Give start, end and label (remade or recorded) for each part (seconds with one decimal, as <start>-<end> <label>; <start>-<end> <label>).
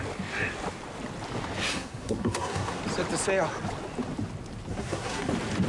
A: 0.0-1.7 recorded; 1.7-2.8 remade; 2.8-4.7 recorded; 4.7-5.3 remade; 5.3-5.7 recorded